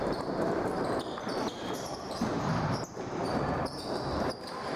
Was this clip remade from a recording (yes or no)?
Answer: yes